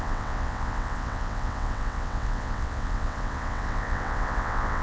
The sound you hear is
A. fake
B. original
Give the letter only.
A